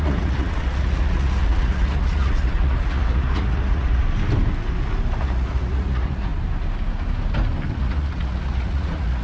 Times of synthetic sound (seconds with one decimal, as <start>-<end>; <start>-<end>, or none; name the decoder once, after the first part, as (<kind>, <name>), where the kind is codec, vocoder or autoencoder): 0.0-4.0 (vocoder, Vocos); 5.2-6.3; 7.7-9.2